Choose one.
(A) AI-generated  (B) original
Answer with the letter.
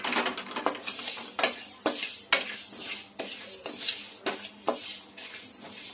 B